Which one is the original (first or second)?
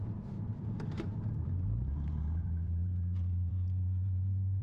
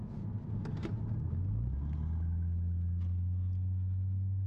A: second